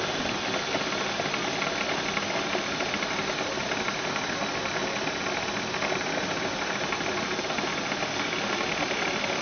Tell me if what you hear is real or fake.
real